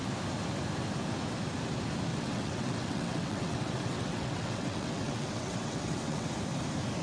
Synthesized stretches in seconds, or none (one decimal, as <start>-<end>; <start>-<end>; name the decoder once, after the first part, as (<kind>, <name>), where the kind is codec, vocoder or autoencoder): 2.1-6.3 (vocoder, WaveNeXt)